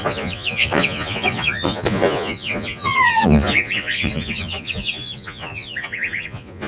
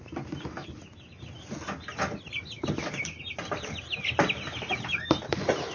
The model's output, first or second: first